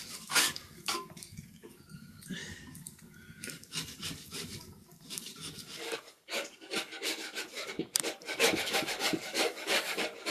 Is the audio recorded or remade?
remade